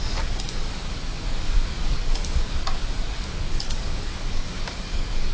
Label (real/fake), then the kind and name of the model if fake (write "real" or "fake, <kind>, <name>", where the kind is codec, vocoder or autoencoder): fake, codec, DAC